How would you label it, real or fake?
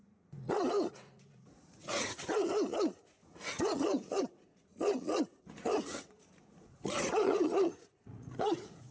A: fake